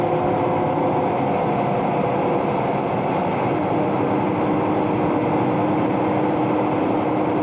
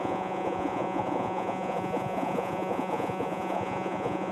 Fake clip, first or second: second